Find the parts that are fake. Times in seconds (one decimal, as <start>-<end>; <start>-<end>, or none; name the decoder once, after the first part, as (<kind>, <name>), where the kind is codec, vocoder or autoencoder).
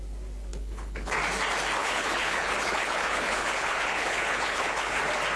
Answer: 0.5-1.2 (codec, HILCodec); 1.8-5.0